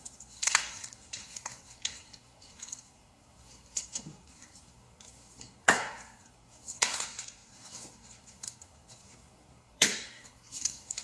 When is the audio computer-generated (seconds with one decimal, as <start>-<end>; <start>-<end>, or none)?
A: 0.0-11.0

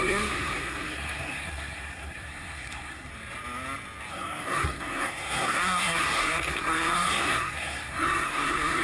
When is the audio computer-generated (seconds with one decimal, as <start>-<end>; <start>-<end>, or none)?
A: 0.0-3.1; 4.1-8.8

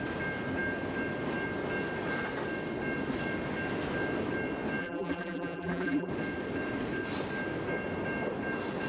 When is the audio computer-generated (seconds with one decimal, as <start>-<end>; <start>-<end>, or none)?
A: 4.8-6.1

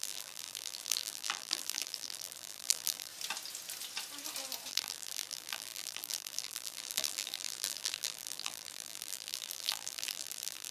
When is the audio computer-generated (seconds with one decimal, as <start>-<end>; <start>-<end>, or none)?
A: 0.0-3.1; 4.7-10.7